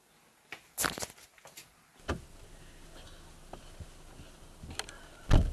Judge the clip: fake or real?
real